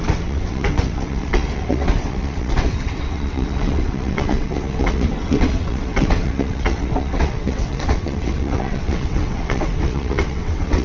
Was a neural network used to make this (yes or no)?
yes